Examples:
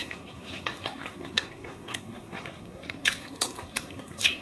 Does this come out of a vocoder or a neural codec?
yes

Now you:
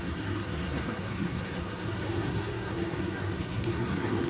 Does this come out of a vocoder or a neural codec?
yes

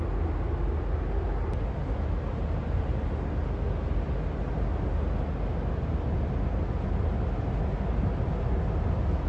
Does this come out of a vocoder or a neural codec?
no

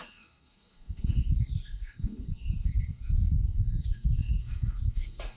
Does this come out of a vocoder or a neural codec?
yes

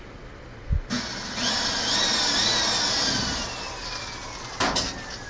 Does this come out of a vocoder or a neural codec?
no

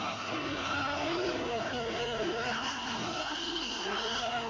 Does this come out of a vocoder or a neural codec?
yes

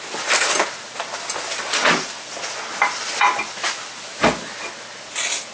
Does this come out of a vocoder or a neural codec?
no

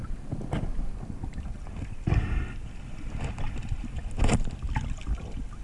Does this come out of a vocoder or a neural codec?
no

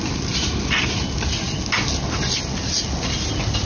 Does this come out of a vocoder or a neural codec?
no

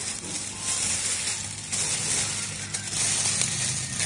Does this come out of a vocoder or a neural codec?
no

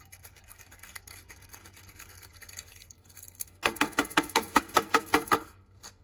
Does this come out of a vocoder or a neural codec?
yes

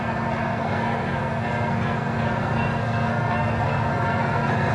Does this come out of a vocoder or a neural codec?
yes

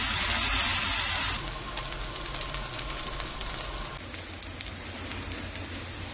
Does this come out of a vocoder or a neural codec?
no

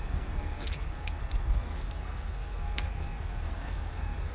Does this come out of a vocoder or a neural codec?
yes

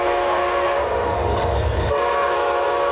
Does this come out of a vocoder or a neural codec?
yes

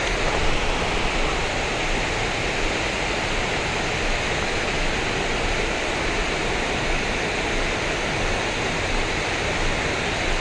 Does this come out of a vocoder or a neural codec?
no